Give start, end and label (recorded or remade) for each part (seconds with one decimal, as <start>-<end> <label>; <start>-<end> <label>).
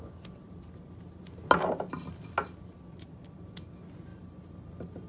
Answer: 0.0-4.1 recorded; 4.1-5.1 remade